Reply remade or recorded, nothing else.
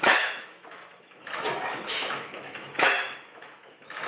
remade